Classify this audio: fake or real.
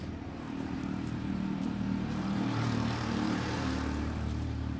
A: fake